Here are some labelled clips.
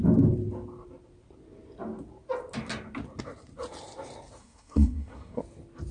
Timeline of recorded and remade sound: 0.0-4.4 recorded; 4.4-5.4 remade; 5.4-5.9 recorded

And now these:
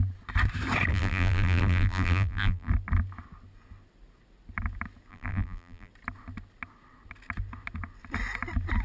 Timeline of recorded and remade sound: 0.0-0.9 recorded; 0.9-2.7 remade; 2.7-5.1 recorded; 5.1-5.9 remade; 5.9-8.8 recorded

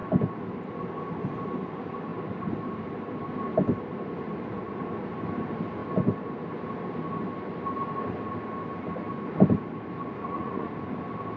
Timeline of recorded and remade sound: 0.0-10.2 recorded; 10.2-10.7 remade; 10.7-11.4 recorded